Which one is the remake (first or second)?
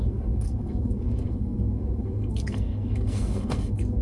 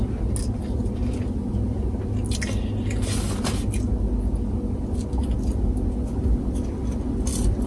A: first